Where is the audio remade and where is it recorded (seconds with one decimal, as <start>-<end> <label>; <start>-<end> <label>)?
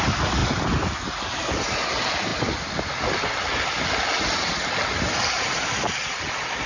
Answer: 0.0-6.7 recorded